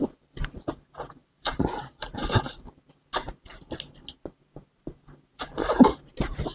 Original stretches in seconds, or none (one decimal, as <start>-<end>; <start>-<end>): 0.0-6.5